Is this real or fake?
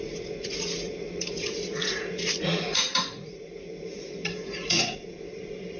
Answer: fake